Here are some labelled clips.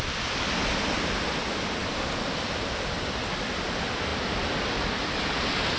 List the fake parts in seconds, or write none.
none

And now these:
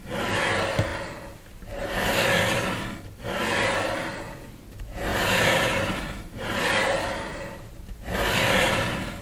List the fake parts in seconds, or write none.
5.1-6.6; 7.3-9.2

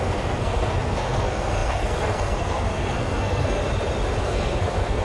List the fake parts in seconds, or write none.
0.0-3.6; 4.2-5.0

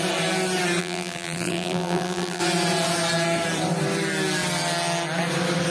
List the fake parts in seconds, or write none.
0.8-2.4

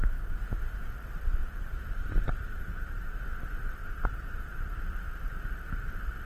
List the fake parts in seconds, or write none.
0.0-0.7; 1.4-3.2; 3.8-4.8

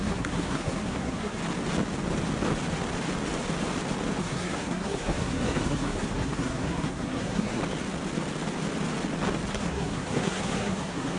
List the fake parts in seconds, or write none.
0.0-1.4; 4.2-7.6; 9.5-11.2

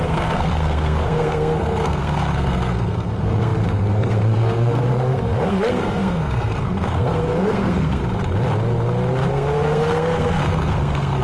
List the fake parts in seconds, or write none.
0.0-8.0; 9.3-11.2